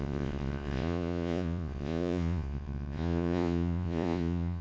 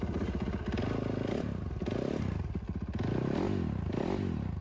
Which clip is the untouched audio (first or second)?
second